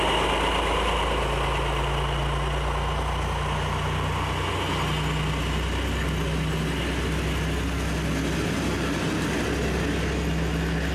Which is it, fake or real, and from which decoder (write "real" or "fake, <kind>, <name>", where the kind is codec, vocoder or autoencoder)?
real